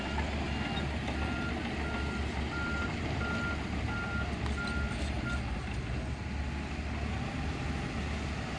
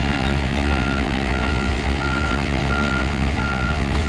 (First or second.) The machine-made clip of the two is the second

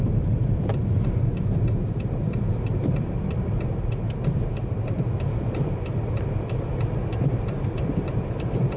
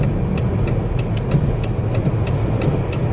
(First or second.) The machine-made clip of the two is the first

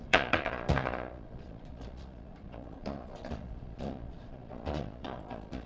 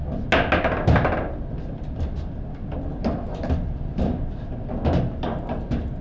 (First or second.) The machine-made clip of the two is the first